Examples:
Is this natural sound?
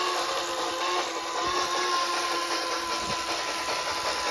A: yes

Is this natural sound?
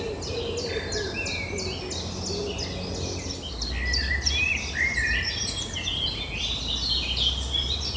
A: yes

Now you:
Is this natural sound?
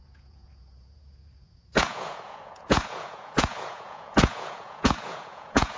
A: no